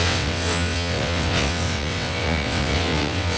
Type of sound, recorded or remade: remade